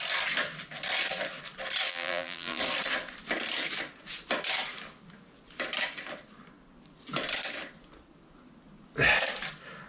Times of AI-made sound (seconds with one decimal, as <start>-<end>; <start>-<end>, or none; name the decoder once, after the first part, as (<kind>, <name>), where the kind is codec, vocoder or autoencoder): 1.9-2.6 (vocoder, BigVGAN v2)